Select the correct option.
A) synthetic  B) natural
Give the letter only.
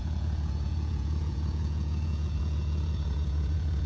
A